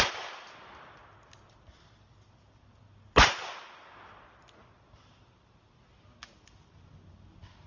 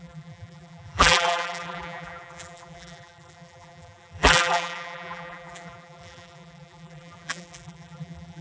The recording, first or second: first